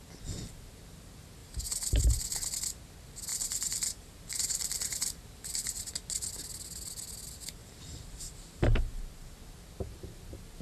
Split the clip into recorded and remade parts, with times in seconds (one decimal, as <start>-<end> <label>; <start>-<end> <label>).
0.0-1.4 recorded; 1.4-2.0 remade; 2.0-3.3 recorded; 3.3-5.9 remade; 5.9-7.6 recorded; 7.6-9.0 remade; 9.0-10.6 recorded